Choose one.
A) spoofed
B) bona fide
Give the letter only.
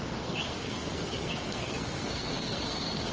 A